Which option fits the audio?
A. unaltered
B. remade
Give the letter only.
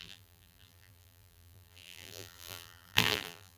B